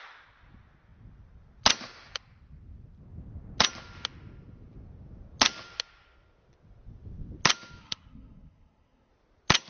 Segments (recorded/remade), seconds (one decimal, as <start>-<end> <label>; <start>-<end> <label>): 0.0-7.8 recorded; 7.8-9.1 remade; 9.1-9.7 recorded